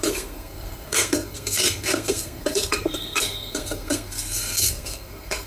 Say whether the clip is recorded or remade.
remade